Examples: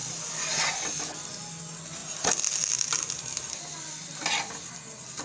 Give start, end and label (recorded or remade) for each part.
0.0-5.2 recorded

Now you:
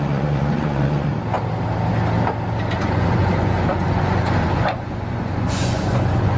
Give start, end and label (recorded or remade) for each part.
0.0-1.1 remade; 1.1-2.8 recorded; 2.8-6.4 remade

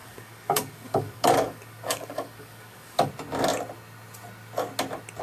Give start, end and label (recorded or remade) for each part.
0.0-3.1 remade; 3.1-5.2 recorded

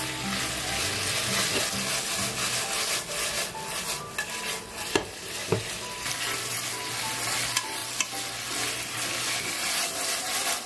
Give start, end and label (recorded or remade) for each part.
0.0-10.7 recorded

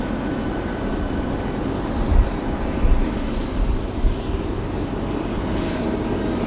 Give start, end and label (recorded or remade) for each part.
0.0-2.1 recorded; 2.1-6.0 remade; 6.0-6.5 recorded

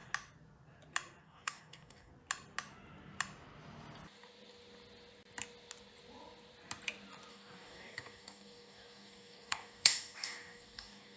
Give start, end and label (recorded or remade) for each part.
0.0-1.2 recorded; 1.2-2.1 remade; 2.1-7.3 recorded; 7.3-11.2 remade

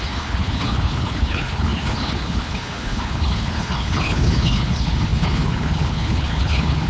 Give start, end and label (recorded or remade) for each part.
0.0-6.9 remade

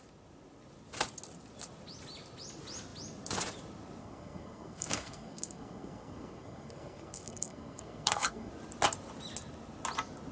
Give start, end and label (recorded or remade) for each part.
0.0-4.0 recorded; 4.0-8.5 remade; 8.5-10.3 recorded